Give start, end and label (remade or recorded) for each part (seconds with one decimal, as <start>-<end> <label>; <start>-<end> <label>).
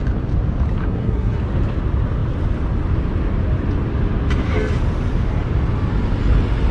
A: 0.0-0.8 recorded; 0.8-1.4 remade; 1.4-6.7 recorded